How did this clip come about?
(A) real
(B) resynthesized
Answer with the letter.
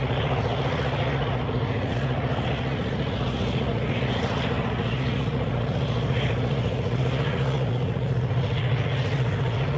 B